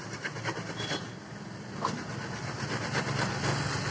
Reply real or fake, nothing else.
real